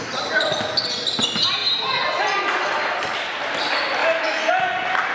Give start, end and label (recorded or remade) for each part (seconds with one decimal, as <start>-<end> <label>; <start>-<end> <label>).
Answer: 0.0-4.0 recorded; 4.0-4.5 remade; 4.5-5.1 recorded

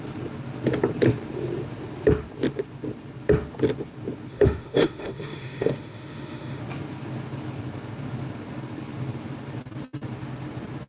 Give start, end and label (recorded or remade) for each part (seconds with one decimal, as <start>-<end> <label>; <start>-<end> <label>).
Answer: 0.0-4.3 recorded; 4.3-6.6 remade; 6.6-10.9 recorded

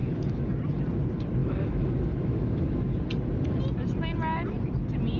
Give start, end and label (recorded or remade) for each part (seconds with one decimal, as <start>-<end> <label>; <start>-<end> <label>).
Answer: 0.0-0.5 remade; 0.5-1.4 recorded; 1.4-2.9 remade; 2.9-5.2 recorded

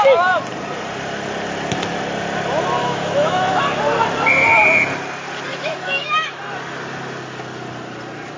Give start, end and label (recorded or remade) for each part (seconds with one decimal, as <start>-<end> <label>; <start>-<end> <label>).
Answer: 0.0-2.8 recorded; 2.8-3.6 remade; 3.6-5.5 recorded; 5.5-6.4 remade; 6.4-8.4 recorded

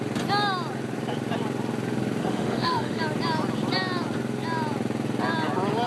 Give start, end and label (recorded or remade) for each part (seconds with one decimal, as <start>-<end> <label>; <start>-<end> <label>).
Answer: 0.0-2.2 recorded; 2.2-3.0 remade; 3.0-5.9 recorded